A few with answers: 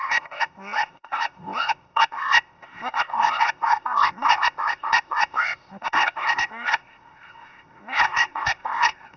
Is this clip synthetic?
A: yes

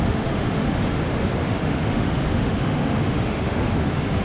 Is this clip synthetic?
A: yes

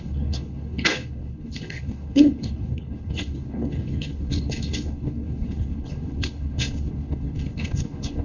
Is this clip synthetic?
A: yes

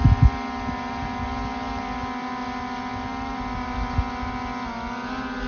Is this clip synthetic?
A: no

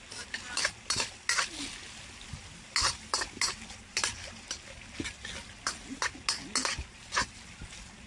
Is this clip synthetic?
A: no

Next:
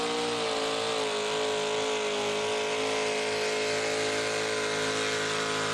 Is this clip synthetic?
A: no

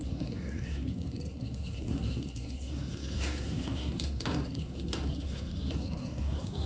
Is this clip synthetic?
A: yes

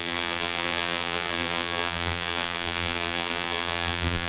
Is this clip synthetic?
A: yes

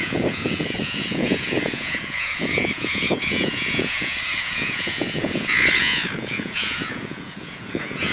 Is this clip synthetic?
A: yes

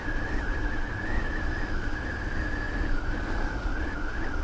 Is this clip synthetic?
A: no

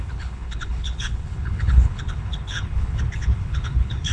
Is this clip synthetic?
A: yes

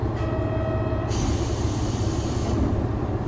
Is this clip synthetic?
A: no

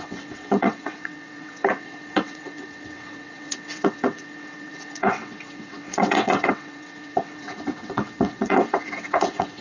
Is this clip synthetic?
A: yes